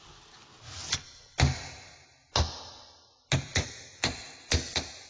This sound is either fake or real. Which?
real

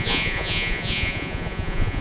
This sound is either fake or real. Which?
fake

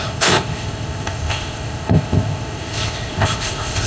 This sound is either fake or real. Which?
fake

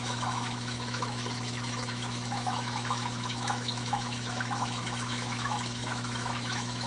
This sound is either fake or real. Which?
fake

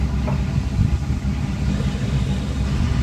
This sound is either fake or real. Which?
real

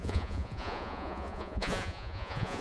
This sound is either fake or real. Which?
fake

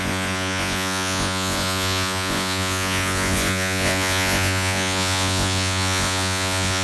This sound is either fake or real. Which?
fake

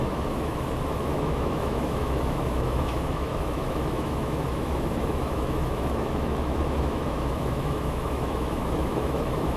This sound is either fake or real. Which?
fake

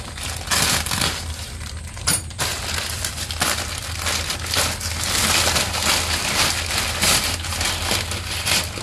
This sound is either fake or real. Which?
real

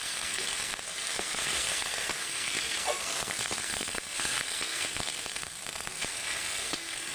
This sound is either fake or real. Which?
fake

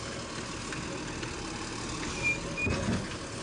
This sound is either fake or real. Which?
real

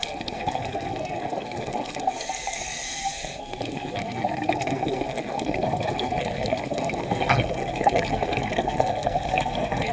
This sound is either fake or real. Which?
fake